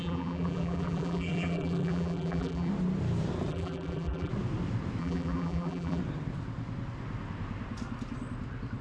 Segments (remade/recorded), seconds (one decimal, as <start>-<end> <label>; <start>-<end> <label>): 0.0-2.7 remade; 2.7-3.5 recorded; 3.5-4.3 remade; 4.3-5.0 recorded; 5.0-6.0 remade; 6.0-8.8 recorded